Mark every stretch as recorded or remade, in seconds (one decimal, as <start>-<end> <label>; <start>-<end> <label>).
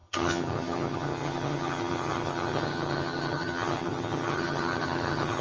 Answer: 0.0-5.4 remade